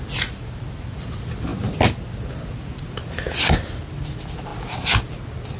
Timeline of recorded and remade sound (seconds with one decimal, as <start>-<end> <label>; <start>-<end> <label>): 0.0-5.6 recorded